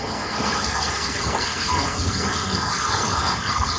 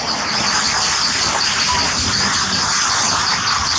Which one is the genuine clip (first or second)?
second